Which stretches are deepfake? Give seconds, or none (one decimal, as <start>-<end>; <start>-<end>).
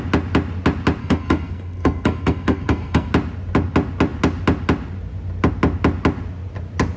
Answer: 1.0-3.1